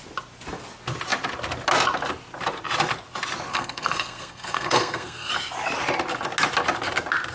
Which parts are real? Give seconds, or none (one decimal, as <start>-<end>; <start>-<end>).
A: 0.0-3.5; 5.3-7.3